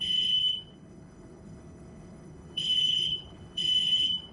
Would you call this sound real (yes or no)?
no